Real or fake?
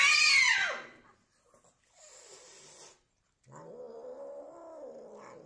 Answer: real